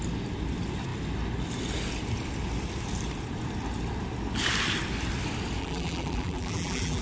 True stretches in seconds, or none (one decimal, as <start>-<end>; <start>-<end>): 0.0-5.6